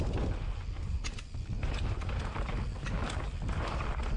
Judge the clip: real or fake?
real